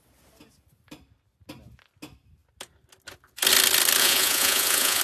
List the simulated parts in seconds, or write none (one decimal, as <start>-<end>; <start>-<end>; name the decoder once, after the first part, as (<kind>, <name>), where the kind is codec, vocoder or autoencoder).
4.0-5.0 (vocoder, Vocos)